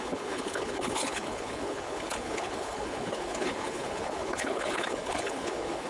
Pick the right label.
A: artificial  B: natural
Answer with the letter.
A